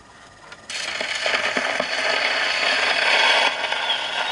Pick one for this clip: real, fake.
real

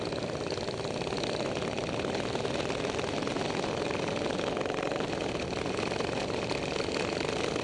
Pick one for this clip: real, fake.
real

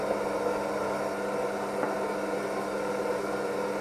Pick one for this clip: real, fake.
real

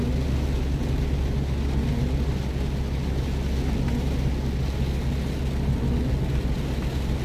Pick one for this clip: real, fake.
real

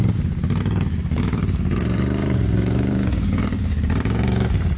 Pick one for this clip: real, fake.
fake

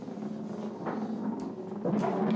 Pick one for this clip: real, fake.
real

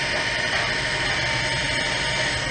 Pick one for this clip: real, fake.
real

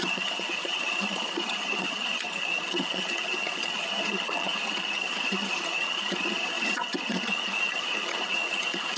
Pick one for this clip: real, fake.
fake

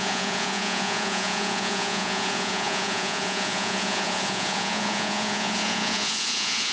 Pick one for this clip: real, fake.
fake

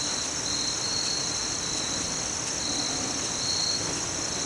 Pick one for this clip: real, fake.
real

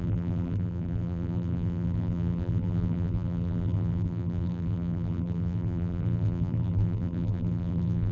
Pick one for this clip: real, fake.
fake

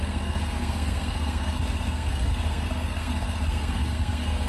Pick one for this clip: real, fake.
fake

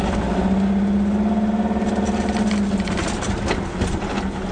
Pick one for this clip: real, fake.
real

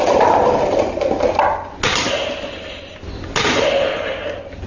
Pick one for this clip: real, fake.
real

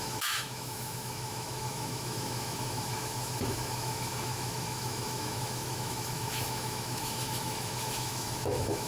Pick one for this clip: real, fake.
fake